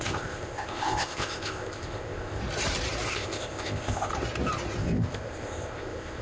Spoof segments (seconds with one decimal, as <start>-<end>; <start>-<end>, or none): 0.0-2.4; 3.1-4.1; 4.8-6.2